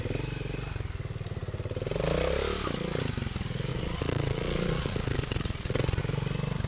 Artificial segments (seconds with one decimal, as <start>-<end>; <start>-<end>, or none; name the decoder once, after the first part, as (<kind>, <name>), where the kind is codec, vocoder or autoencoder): 3.7-6.0 (vocoder, Vocos)